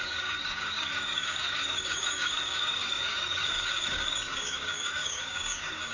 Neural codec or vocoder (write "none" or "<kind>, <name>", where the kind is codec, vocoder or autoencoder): codec, DAC